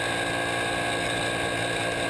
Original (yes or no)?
yes